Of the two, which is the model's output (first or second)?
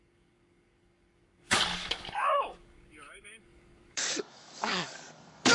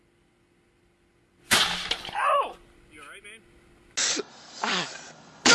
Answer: first